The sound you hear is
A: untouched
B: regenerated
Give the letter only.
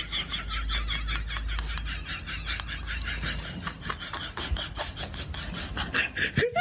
A